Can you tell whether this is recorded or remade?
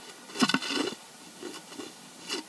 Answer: recorded